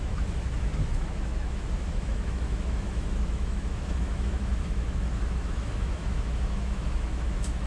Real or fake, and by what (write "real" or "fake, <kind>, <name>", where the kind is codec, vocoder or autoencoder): fake, autoencoder, DAC-VAE